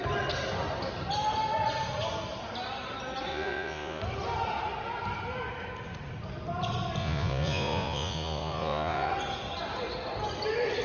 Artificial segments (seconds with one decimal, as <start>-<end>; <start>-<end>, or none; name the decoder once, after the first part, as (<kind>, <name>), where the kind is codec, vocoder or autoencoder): 3.3-4.0 (vocoder, Vocos); 7.0-9.1